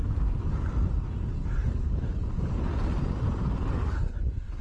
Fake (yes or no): no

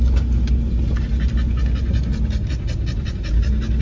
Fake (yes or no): no